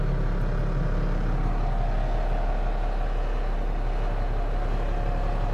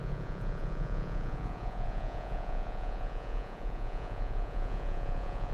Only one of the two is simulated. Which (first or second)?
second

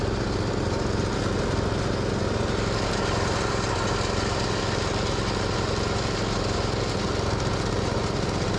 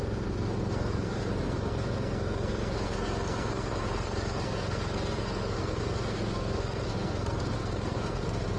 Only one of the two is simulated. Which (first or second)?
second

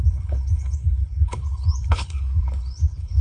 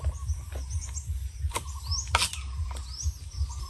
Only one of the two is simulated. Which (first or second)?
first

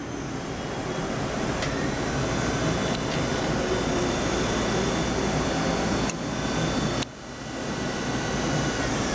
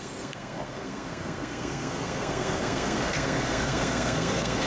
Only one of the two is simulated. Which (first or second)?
second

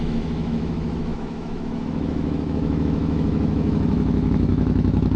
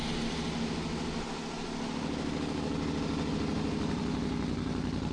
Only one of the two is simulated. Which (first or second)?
first